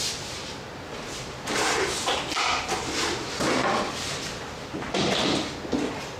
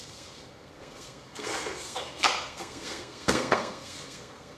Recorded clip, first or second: first